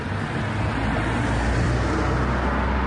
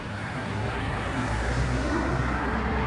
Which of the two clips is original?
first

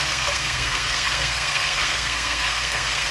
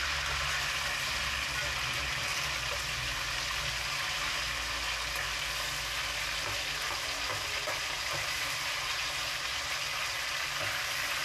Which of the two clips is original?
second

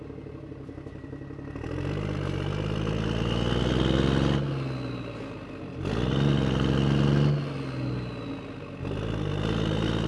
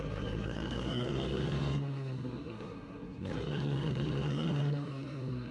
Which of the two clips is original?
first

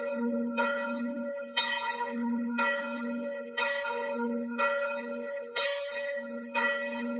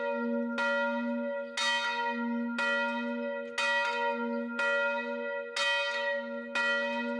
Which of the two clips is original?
second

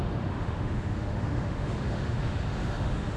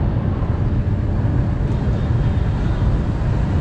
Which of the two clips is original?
second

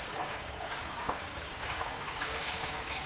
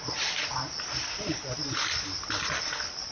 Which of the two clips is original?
second